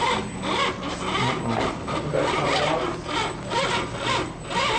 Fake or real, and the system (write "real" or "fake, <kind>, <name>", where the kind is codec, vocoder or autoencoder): real